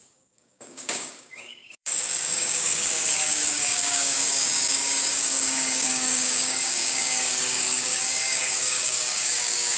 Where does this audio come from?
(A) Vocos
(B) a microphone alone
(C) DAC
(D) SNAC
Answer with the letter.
C